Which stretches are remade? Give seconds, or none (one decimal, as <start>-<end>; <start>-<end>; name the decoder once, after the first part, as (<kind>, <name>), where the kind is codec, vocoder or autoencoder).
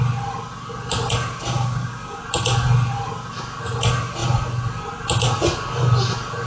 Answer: 1.5-2.2 (codec, DAC)